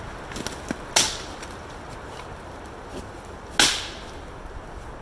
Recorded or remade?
recorded